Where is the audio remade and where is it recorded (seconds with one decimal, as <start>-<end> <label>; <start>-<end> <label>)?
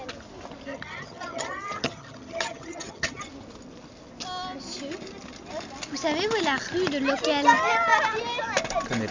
0.0-0.7 recorded; 0.7-3.2 remade; 3.2-9.1 recorded